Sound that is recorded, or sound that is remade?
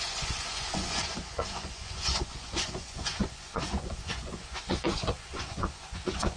remade